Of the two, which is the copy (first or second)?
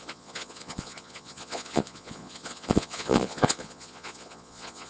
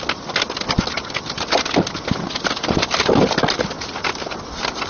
first